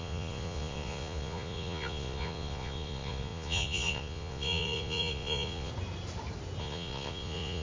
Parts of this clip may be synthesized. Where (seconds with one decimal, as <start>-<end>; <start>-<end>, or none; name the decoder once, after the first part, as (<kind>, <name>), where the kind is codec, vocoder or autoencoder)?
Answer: 0.0-5.7 (vocoder, Vocos); 6.6-7.6